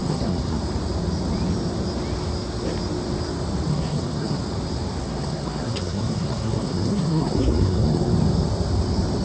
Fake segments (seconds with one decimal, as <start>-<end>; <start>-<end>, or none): 0.0-0.6; 3.7-4.4; 5.0-8.1